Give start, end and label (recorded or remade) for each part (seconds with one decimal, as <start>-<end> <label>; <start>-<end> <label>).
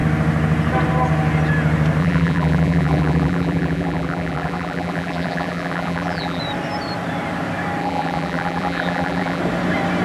0.0-2.0 recorded; 2.0-6.4 remade; 6.4-7.8 recorded; 7.8-9.4 remade; 9.4-10.0 recorded